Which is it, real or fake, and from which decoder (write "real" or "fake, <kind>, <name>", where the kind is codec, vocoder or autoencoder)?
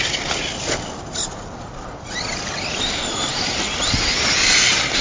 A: real